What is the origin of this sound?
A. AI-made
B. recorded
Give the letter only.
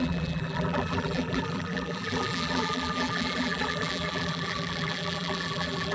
A